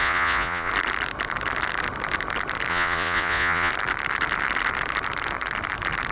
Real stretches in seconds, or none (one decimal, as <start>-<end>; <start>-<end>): 0.7-2.7; 3.7-6.1